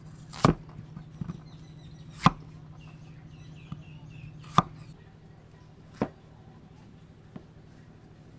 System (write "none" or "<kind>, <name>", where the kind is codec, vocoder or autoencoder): none